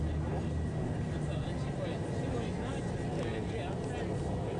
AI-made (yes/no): no